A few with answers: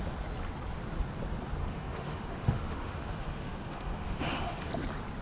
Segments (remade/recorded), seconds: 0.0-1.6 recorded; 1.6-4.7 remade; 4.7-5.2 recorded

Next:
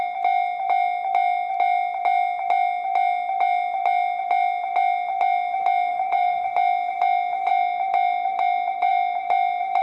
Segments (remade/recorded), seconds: 0.0-5.9 recorded; 5.9-6.5 remade; 6.5-9.8 recorded

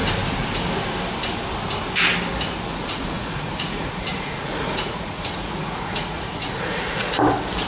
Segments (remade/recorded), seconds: 0.0-2.7 recorded; 2.7-7.2 remade; 7.2-7.7 recorded

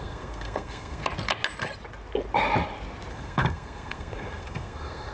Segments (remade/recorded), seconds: 0.0-1.0 remade; 1.0-3.1 recorded; 3.1-5.1 remade

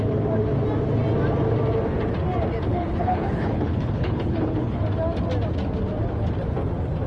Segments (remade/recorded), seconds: 0.0-2.7 recorded; 2.7-4.8 remade; 4.8-7.1 recorded

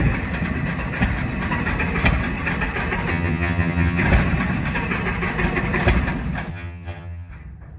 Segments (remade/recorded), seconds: 0.0-3.1 recorded; 3.1-4.0 remade; 4.0-6.5 recorded; 6.5-7.3 remade; 7.3-7.8 recorded